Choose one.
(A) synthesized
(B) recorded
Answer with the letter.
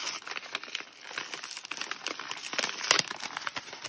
B